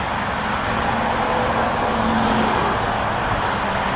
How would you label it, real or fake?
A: real